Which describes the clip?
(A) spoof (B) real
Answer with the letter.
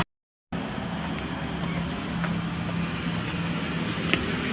B